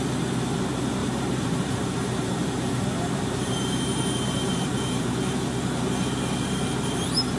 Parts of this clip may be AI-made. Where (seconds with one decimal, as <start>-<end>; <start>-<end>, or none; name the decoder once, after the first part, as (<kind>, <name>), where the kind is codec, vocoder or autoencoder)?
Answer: 1.0-5.1 (vocoder, BigVGAN v2)